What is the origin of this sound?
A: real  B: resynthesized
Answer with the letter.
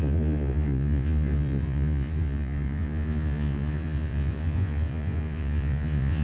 B